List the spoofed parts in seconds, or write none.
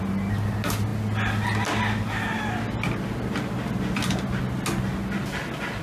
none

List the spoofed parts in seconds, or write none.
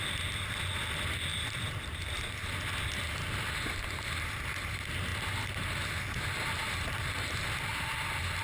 1.3-2.2; 6.6-7.3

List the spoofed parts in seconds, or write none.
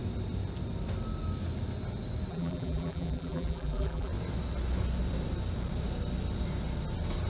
2.3-4.1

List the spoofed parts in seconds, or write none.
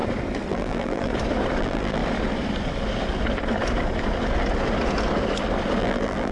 0.5-1.1; 1.6-2.0; 5.8-6.3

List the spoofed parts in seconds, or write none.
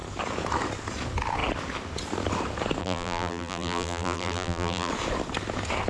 2.8-4.9